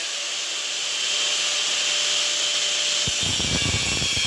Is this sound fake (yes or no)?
no